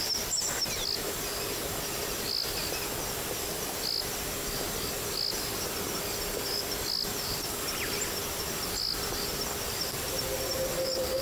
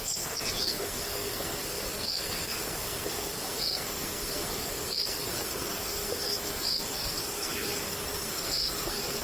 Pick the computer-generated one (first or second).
second